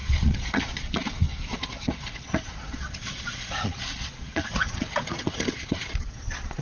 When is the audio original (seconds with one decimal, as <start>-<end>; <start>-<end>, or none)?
none